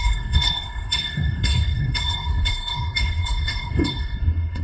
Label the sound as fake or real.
fake